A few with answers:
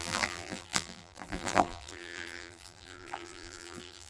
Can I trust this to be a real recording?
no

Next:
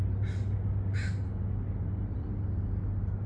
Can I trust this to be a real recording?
yes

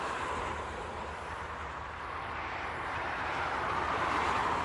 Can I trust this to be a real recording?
no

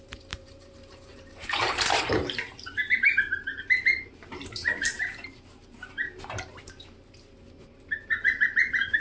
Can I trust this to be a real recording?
no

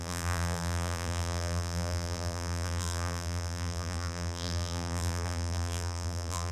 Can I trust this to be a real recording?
no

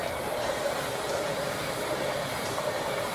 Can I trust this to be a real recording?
no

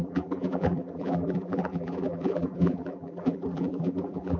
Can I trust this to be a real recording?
no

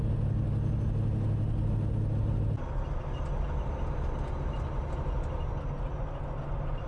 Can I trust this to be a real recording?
yes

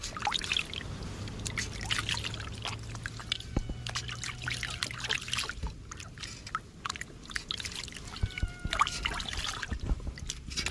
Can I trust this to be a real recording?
yes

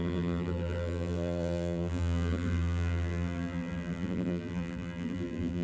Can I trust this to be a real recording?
no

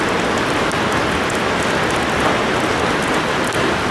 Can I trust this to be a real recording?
yes